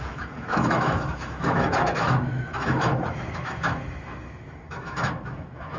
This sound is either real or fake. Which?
fake